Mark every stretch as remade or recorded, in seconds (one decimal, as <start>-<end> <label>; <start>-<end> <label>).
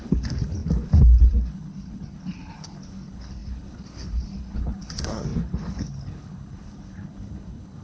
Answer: 0.0-7.8 remade